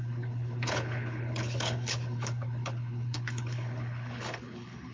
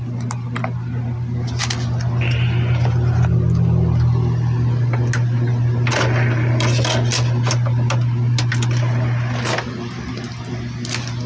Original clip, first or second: second